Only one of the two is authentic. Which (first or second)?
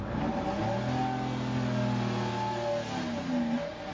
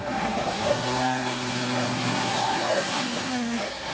first